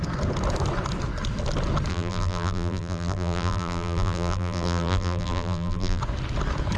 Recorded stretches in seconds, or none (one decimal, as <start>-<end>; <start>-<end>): 0.0-1.9; 6.0-6.8